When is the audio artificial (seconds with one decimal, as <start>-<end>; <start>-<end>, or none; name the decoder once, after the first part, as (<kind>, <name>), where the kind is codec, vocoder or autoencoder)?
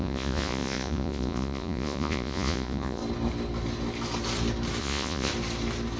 0.0-3.0 (vocoder, Vocos); 4.8-5.3